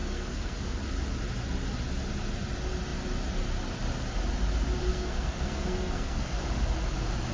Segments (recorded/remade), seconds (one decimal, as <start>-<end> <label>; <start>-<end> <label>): 0.0-0.8 remade; 0.8-4.8 recorded; 4.8-6.4 remade; 6.4-7.3 recorded